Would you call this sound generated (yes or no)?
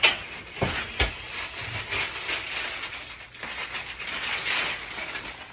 no